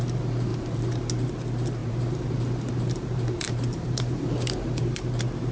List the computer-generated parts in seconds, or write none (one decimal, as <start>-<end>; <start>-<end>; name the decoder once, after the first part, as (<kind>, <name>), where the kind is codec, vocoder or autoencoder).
0.5-1.1 (vocoder, BigVGAN v2); 1.8-5.1